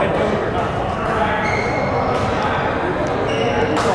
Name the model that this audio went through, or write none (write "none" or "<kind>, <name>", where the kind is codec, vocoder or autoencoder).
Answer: none